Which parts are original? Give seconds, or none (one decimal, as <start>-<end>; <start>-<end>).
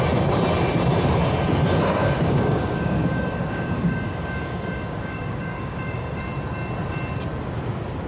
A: 0.0-2.0; 6.2-8.1